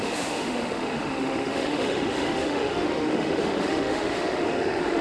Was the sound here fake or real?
fake